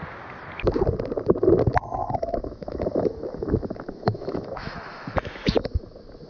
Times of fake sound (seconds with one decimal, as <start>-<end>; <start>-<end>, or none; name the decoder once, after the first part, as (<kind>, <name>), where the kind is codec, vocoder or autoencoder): 2.0-5.8 (autoencoder, DAC-VAE)